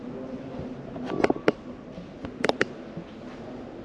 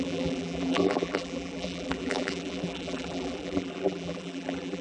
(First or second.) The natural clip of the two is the first